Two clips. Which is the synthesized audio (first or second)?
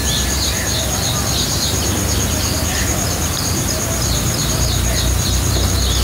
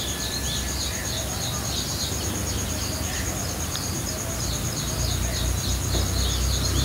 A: first